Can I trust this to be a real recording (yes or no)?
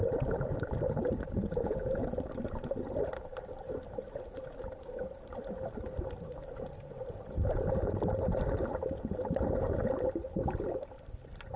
yes